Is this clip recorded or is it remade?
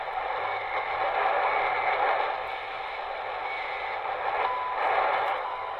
recorded